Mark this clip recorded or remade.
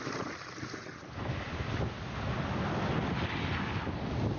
recorded